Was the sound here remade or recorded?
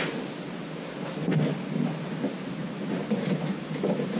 recorded